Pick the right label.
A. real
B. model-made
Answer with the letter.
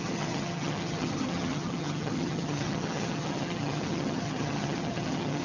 B